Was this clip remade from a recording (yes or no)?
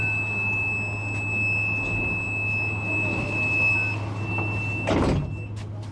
no